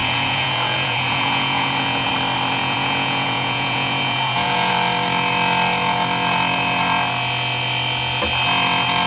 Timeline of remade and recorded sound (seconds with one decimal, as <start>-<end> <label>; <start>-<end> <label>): 0.0-2.1 remade; 2.1-2.6 recorded; 2.6-4.7 remade; 4.7-9.1 recorded